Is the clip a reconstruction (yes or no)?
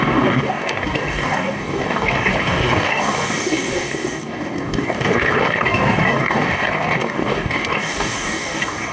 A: yes